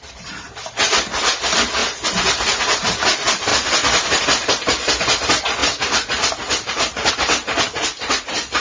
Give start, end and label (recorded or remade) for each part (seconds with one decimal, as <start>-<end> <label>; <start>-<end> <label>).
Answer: 0.0-3.5 recorded; 3.5-4.2 remade; 4.2-5.6 recorded; 5.6-7.1 remade; 7.1-8.6 recorded